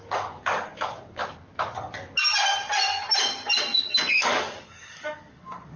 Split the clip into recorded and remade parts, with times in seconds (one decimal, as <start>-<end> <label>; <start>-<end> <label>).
0.0-1.2 remade; 1.2-4.1 recorded; 4.1-5.8 remade